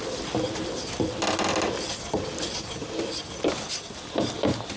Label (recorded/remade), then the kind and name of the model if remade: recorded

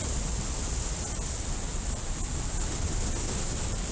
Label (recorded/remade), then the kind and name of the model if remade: recorded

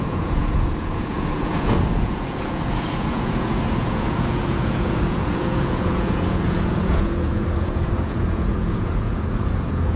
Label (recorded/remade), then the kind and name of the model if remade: remade, vocoder, Vocos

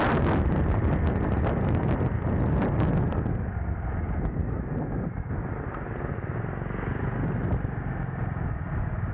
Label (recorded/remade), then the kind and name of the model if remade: recorded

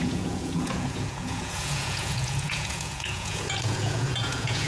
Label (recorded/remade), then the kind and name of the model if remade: remade, vocoder, Vocos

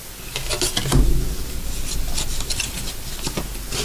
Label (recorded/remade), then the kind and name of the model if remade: recorded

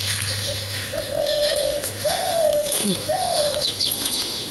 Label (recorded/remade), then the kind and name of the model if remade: remade, autoencoder, DAC-VAE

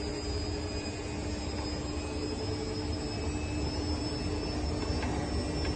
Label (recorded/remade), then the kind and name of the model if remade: recorded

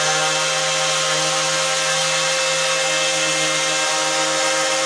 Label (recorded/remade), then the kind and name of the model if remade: recorded